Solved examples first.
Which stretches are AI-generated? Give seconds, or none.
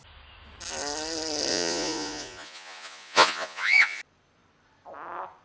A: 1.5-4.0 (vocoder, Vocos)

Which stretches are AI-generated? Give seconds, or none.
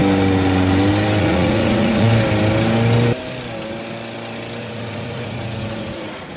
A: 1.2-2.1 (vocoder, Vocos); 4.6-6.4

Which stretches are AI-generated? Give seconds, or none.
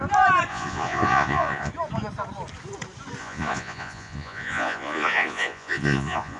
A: 0.5-1.7 (vocoder, Vocos); 3.2-6.4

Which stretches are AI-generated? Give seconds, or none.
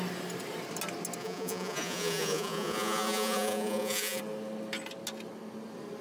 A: 1.2-4.2 (vocoder, Vocos)